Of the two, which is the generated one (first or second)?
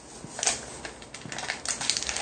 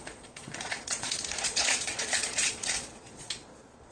second